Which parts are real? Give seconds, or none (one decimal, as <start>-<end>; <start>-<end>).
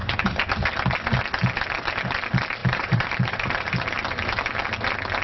0.5-2.6; 3.9-5.2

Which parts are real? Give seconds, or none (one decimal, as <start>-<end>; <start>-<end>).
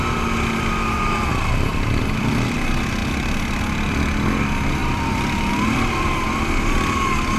0.0-1.7; 2.3-3.0; 3.6-4.8; 5.5-7.4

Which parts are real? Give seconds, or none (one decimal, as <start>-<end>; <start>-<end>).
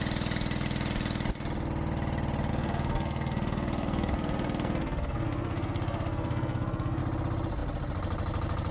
0.0-2.5; 7.0-8.7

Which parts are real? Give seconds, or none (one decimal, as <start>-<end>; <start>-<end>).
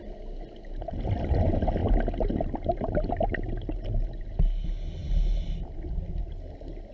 0.0-6.9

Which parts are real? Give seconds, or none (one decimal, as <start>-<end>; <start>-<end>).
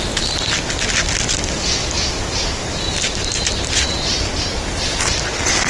0.0-1.8; 5.2-5.7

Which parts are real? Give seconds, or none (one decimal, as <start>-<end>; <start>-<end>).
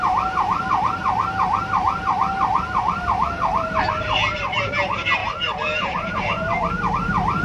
1.0-2.8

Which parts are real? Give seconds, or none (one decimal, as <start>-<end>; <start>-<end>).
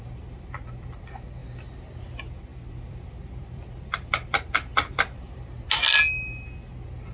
0.0-2.5; 5.6-7.1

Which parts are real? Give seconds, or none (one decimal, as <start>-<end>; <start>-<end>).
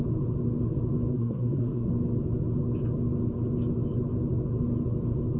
0.0-1.1; 1.9-5.4